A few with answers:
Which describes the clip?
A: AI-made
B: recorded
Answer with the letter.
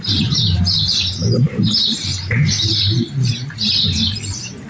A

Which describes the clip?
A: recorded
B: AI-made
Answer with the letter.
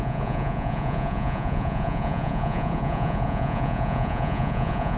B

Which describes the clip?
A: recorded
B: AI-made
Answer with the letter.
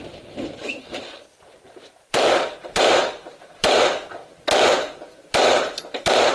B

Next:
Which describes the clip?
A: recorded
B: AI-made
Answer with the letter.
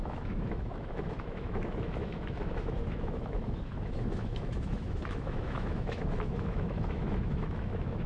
B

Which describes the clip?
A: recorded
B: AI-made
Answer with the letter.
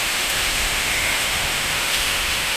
B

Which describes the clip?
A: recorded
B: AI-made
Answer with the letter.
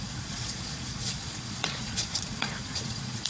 B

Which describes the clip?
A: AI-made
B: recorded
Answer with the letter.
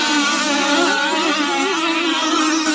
B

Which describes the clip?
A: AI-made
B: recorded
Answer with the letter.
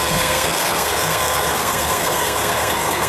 A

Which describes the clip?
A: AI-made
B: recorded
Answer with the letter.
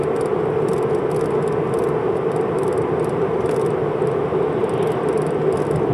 B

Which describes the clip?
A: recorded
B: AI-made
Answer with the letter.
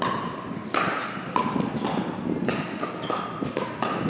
A